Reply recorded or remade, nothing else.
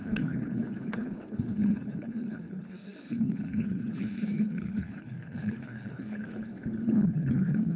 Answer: remade